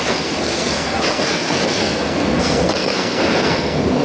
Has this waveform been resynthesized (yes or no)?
yes